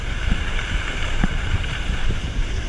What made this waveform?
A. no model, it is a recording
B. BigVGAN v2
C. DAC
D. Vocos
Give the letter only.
B